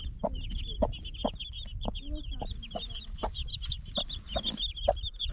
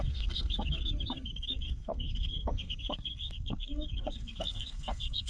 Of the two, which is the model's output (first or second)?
second